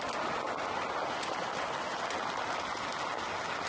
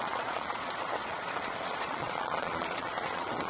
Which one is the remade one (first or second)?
second